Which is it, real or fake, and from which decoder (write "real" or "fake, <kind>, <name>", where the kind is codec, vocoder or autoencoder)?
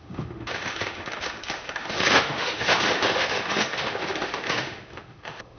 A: fake, autoencoder, DAC-VAE